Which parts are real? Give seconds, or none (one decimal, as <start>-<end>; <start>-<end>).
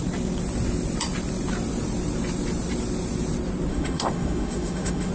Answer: 0.0-3.7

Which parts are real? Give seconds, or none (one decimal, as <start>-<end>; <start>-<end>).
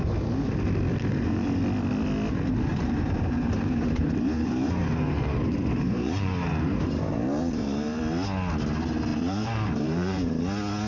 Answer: 0.0-1.1; 1.6-2.7; 8.0-9.1; 10.4-10.9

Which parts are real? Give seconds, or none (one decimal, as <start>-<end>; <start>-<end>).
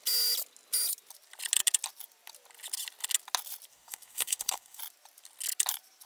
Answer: 0.0-3.7; 4.8-6.1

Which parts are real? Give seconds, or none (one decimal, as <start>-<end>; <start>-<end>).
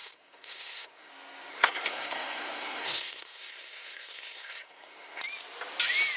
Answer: 1.1-1.5; 5.2-6.2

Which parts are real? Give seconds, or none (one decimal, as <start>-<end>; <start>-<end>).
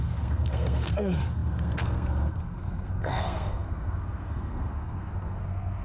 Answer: none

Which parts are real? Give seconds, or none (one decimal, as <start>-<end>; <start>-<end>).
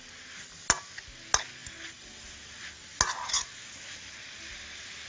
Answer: 0.0-5.1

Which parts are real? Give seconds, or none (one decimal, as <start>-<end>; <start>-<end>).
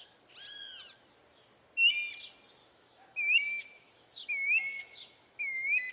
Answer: 0.0-2.6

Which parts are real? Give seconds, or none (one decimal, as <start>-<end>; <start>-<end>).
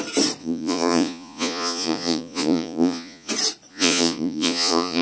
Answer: 0.0-0.4; 3.3-3.7